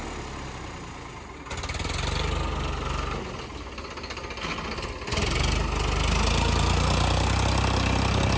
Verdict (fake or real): real